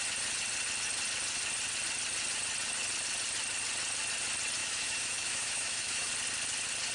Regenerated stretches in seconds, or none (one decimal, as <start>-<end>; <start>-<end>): 4.6-6.1